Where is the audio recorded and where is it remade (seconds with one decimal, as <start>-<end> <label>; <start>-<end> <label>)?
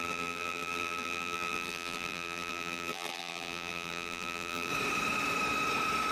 0.0-4.7 remade; 4.7-6.1 recorded